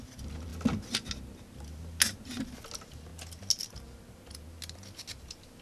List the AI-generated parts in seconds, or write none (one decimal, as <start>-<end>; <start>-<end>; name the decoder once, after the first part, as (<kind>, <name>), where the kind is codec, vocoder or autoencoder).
none

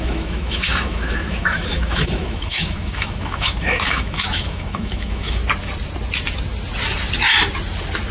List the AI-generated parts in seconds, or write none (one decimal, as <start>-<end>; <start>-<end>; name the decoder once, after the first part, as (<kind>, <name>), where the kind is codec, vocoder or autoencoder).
0.0-5.4 (autoencoder, DAC-VAE)

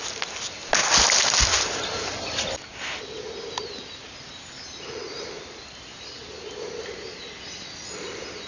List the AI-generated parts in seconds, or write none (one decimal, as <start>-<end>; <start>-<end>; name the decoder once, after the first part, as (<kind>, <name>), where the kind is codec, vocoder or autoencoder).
none

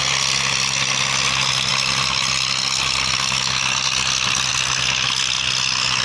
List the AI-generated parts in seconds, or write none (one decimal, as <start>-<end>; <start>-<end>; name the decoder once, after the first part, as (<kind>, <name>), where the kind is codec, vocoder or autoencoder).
none

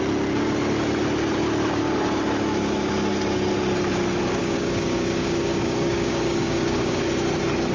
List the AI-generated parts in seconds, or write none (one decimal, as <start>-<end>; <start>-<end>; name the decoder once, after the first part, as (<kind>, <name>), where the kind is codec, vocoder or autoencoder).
4.4-7.0 (codec, DAC)

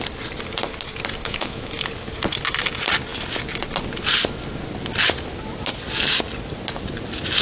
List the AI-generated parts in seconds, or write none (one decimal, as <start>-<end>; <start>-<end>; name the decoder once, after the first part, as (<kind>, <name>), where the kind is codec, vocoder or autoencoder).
1.2-1.8 (autoencoder, DAC-VAE)

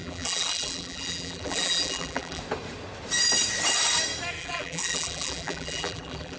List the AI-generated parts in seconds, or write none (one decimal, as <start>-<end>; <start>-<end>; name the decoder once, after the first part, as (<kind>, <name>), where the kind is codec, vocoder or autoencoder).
0.0-2.4 (vocoder, BigVGAN v2); 4.4-6.4